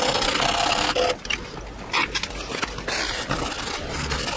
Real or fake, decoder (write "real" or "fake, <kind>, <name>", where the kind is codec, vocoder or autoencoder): real